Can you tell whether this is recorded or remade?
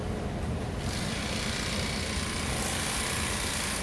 recorded